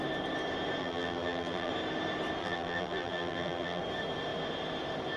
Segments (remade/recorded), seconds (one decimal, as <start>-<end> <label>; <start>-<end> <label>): 0.0-0.8 recorded; 0.8-1.7 remade; 1.7-2.4 recorded; 2.4-3.8 remade; 3.8-5.2 recorded